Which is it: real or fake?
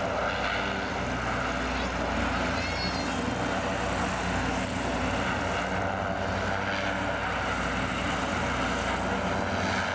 real